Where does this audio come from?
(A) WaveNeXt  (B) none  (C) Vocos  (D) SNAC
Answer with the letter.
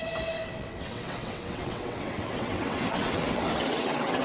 A